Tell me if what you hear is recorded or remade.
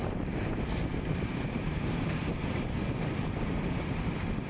remade